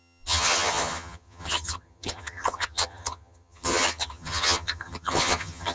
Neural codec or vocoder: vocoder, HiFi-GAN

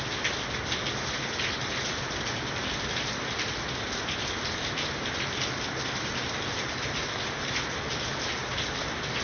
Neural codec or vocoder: none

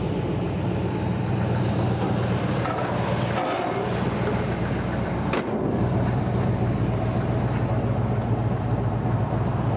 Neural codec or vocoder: none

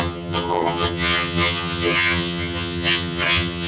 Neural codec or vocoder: vocoder, HiFi-GAN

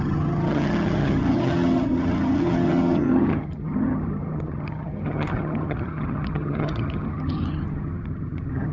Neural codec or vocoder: vocoder, HiFi-GAN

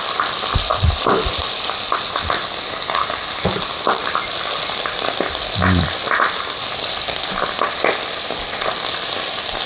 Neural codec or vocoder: none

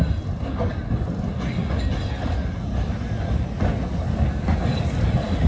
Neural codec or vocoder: none